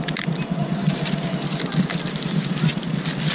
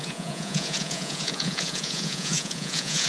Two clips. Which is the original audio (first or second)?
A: first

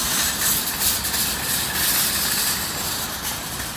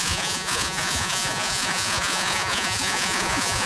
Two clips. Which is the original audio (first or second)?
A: first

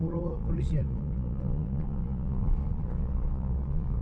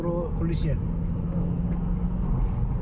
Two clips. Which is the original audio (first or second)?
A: second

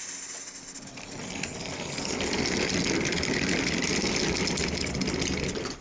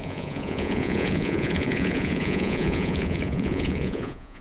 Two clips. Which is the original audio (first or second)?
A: first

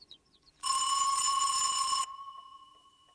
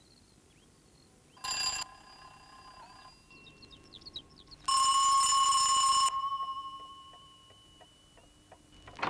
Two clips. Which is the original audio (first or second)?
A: second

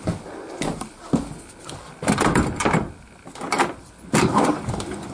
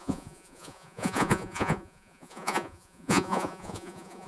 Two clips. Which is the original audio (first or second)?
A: first